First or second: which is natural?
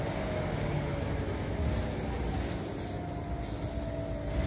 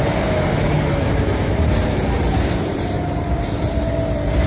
first